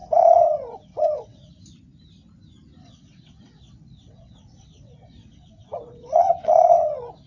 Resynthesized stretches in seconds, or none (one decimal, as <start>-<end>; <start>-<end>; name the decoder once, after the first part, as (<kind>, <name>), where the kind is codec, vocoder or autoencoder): 0.0-1.5 (vocoder, WaveNeXt); 2.8-7.3